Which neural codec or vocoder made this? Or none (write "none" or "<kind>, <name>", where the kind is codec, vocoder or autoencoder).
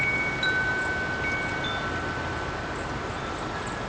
none